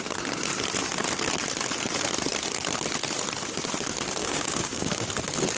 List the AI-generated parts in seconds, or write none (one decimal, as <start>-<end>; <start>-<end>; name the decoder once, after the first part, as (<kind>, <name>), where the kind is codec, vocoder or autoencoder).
4.2-5.1 (codec, DAC)